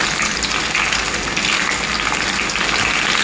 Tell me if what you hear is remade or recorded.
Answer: recorded